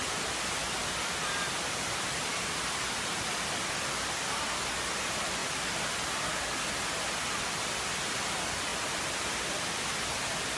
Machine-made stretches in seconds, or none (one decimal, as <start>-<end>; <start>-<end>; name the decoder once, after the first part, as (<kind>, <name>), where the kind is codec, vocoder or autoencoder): none